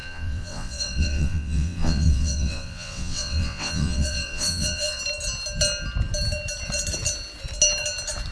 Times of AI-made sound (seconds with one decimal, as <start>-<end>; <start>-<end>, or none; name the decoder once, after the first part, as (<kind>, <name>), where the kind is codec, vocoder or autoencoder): 0.0-5.0 (vocoder, WaveNeXt)